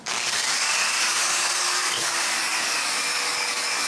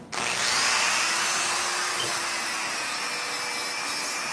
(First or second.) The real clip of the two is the second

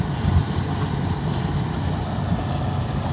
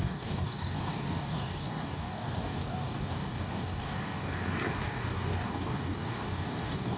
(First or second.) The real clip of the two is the first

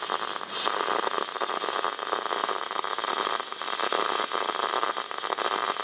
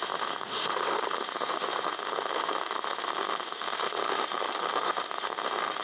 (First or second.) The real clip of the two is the first